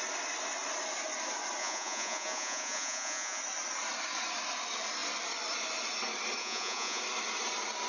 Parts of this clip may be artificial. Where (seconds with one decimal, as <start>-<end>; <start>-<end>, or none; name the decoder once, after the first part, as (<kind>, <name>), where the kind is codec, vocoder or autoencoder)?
1.6-3.4 (vocoder, Vocos); 6.4-7.0